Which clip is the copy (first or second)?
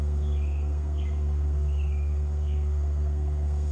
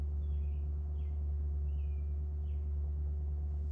first